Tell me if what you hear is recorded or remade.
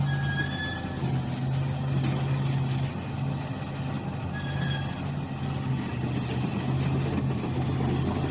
recorded